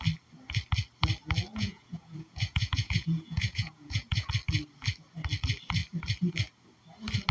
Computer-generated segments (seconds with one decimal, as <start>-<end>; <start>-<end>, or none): 1.5-4.3